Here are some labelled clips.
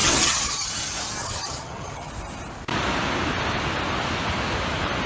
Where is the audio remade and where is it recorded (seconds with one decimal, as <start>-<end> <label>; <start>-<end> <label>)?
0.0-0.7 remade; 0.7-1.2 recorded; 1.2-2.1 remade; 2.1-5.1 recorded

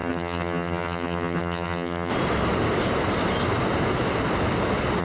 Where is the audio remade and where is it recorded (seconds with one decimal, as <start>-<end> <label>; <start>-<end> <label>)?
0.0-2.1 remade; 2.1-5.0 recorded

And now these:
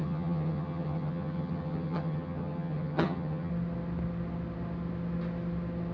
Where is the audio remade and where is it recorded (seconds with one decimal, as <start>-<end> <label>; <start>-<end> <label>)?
0.0-3.5 remade; 3.5-5.9 recorded

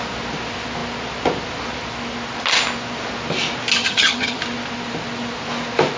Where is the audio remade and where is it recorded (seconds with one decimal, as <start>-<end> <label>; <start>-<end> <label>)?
0.0-3.8 recorded; 3.8-4.4 remade; 4.4-6.0 recorded